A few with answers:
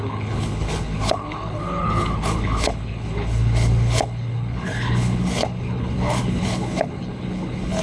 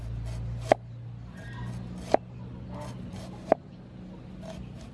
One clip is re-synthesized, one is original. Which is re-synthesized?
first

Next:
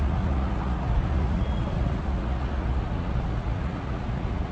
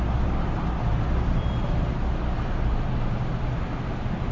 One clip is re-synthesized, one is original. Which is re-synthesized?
first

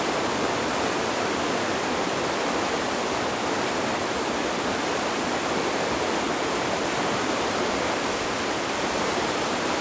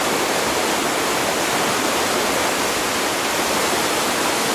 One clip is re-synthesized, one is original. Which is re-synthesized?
first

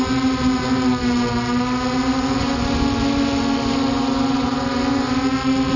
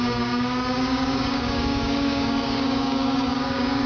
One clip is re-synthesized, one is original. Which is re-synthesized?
second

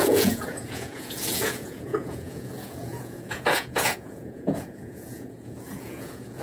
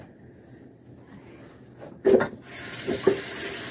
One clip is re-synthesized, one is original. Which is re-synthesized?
first